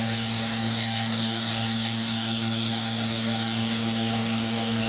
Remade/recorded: remade